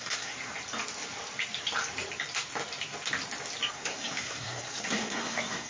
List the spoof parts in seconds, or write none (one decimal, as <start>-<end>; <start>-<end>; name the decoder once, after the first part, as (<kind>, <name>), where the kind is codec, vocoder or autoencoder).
0.0-0.5 (codec, SNAC); 3.7-5.7